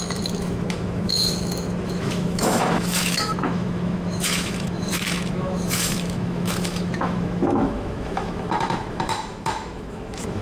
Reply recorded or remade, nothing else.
remade